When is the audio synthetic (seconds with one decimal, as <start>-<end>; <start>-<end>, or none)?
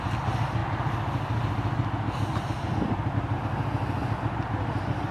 none